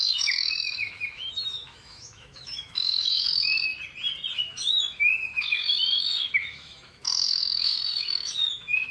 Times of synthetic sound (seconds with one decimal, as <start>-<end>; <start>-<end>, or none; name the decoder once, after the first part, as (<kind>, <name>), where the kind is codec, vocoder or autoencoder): 0.0-3.7 (autoencoder, DAC-VAE); 4.3-8.9